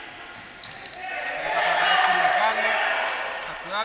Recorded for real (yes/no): yes